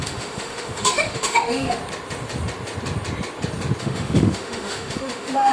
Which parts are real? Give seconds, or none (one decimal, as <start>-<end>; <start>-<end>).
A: 1.8-3.8

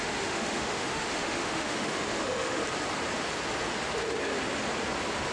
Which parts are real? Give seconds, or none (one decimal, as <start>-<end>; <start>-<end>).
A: 2.6-5.3

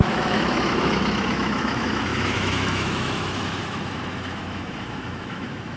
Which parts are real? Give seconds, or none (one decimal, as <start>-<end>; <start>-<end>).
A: none